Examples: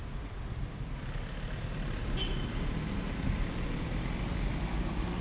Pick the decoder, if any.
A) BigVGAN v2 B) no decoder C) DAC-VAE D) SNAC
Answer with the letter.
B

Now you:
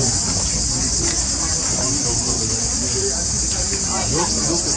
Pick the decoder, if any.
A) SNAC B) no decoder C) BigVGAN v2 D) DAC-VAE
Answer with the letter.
B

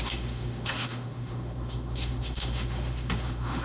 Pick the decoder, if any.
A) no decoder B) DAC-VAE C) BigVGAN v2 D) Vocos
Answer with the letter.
B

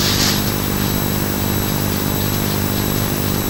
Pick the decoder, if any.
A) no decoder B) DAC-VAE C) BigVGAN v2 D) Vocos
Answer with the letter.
A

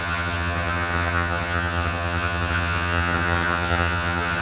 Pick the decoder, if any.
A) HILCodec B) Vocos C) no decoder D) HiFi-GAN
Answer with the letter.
D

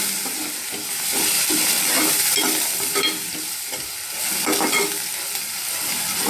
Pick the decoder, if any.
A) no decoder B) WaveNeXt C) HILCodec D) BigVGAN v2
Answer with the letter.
A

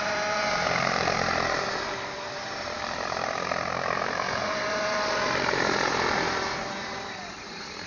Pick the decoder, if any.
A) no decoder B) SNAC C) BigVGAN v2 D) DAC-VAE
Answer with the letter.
C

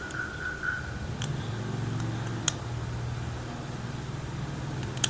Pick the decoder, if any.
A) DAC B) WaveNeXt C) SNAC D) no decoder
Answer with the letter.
D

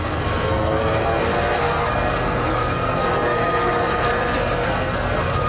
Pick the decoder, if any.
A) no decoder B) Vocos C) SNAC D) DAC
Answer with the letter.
C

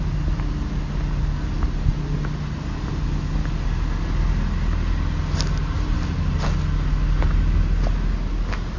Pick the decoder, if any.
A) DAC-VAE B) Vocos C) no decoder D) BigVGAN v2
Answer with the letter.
C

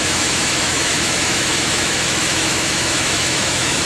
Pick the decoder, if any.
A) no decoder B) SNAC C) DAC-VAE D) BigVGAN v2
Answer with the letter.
C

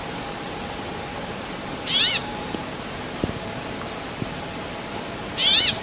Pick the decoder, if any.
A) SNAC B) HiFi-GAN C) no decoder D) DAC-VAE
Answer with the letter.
C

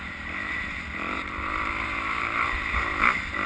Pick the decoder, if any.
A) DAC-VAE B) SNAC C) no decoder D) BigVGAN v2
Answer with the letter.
D